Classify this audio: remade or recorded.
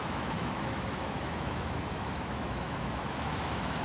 remade